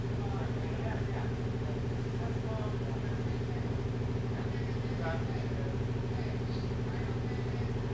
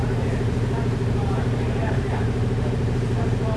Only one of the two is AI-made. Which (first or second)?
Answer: second